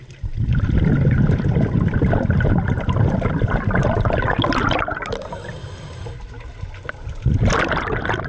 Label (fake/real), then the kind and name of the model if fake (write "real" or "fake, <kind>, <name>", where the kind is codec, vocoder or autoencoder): real